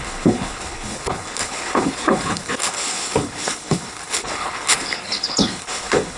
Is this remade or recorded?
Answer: remade